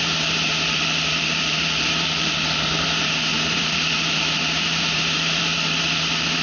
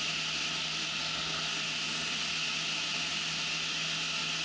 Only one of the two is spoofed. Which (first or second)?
first